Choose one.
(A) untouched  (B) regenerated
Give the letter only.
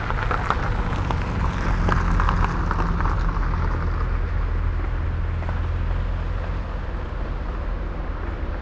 A